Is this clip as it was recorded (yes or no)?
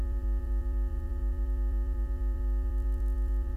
no